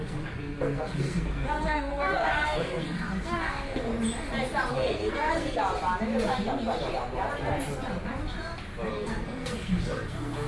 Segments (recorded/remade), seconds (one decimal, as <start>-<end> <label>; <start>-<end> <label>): 0.0-3.9 remade; 3.9-4.7 recorded; 4.7-5.6 remade; 5.6-8.9 recorded; 8.9-10.5 remade